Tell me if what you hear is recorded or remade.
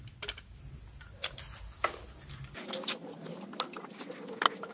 recorded